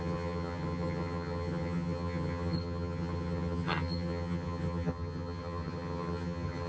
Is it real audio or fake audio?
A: fake